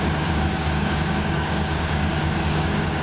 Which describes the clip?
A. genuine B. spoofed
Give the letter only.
B